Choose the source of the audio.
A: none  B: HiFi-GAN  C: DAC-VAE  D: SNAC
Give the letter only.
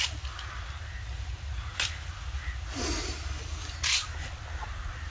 A